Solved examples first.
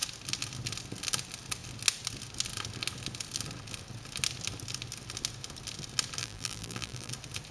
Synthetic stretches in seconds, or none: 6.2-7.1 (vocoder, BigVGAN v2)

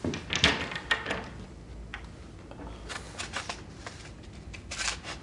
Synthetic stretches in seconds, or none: none

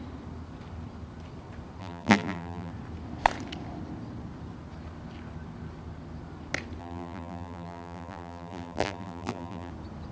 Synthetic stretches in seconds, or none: 1.8-2.7 (vocoder, BigVGAN v2); 6.8-9.7

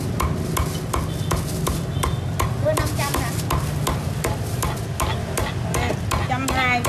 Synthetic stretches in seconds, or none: none

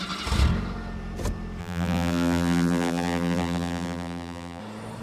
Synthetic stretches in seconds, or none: 1.6-4.6 (vocoder, BigVGAN v2)

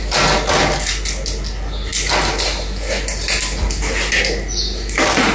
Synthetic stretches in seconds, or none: none

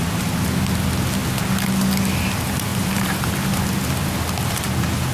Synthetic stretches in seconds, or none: 2.7-3.3 (vocoder, BigVGAN v2)

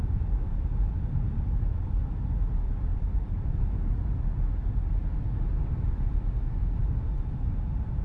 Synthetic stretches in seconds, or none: 2.9-3.6 (vocoder, BigVGAN v2); 5.6-6.2